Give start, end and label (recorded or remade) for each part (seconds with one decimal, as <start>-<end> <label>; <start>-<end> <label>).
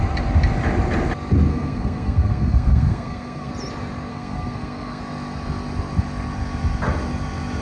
0.0-1.5 recorded; 1.5-3.5 remade; 3.5-4.1 recorded; 4.1-5.0 remade; 5.0-7.6 recorded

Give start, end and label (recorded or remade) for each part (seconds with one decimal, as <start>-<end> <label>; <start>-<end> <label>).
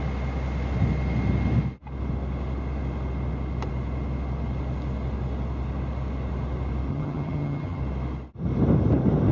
0.0-6.9 recorded; 6.9-7.8 remade; 7.8-9.3 recorded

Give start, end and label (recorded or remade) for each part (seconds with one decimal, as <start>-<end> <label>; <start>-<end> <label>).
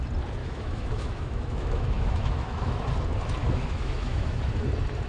0.0-0.4 recorded; 0.4-2.8 remade; 2.8-3.4 recorded; 3.4-4.4 remade; 4.4-5.1 recorded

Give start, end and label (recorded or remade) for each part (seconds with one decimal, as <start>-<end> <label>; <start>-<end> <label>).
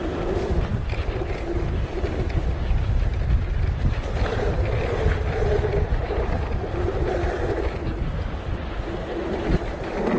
0.0-6.0 recorded; 6.0-6.9 remade; 6.9-10.2 recorded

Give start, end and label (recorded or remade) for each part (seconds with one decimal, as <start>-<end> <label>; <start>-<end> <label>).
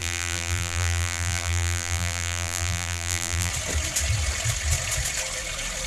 0.0-3.5 remade; 3.5-5.9 recorded